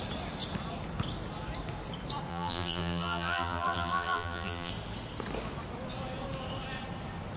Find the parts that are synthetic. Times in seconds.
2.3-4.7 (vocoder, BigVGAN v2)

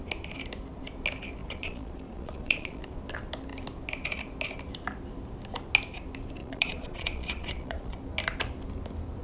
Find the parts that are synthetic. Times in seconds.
1.4-2.8 (vocoder, Vocos); 6.4-8.0

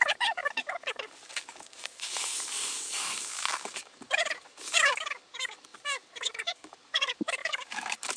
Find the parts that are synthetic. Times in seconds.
0.0-8.2 (codec, DAC)

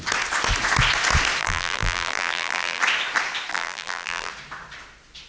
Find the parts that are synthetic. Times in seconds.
1.4-2.8 (vocoder, BigVGAN v2); 3.5-4.3

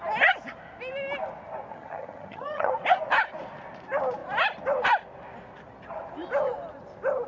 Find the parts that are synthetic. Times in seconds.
1.7-2.7 (vocoder, HiFi-GAN)

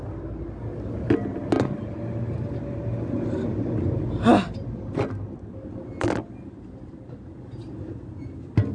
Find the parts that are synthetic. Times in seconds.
none

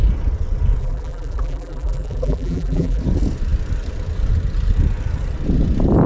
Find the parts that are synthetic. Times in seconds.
0.8-3.0 (vocoder, BigVGAN v2)